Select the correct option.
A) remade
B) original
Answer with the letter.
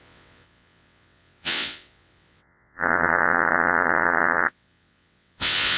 A